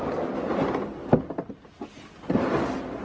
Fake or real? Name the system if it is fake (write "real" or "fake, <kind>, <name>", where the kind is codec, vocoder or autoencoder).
real